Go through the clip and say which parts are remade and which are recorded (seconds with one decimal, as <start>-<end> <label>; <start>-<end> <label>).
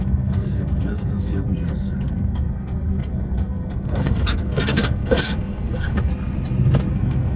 0.0-6.1 remade; 6.1-6.9 recorded; 6.9-7.4 remade